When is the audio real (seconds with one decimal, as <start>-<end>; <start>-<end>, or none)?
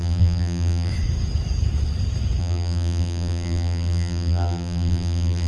0.9-2.4